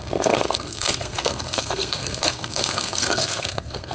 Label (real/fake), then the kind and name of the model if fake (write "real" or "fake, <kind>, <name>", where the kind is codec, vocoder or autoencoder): fake, codec, SNAC